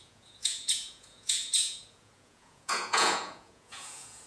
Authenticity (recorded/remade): remade